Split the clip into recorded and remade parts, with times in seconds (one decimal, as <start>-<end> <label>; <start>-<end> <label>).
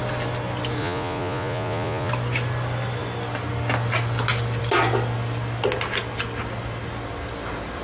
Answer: 0.0-0.8 recorded; 0.8-2.1 remade; 2.1-7.8 recorded